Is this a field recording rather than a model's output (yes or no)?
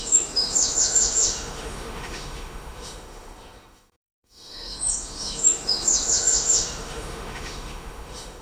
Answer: no